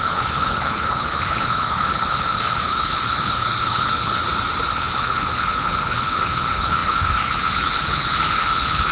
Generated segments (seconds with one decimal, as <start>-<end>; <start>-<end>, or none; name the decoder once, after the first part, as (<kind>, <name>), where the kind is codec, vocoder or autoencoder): 0.0-4.2 (codec, HILCodec); 4.7-8.9